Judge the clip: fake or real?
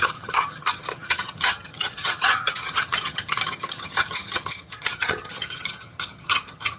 fake